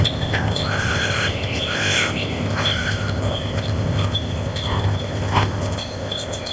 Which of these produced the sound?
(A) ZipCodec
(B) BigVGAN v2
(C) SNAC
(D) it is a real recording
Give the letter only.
A